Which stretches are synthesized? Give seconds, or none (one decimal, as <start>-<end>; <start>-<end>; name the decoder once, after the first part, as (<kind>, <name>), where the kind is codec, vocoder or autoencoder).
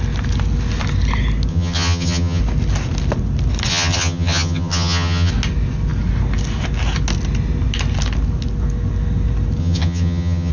1.5-2.4 (vocoder, HiFi-GAN); 3.7-5.3; 9.6-10.5